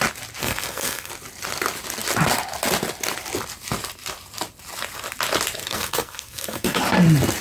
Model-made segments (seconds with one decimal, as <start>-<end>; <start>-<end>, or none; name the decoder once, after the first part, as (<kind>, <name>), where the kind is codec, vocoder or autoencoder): 0.4-1.1 (codec, SNAC); 5.6-6.8